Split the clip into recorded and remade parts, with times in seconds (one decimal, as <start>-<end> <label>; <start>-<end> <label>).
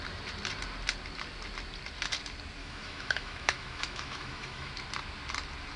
0.0-2.6 recorded; 2.6-4.7 remade; 4.7-5.8 recorded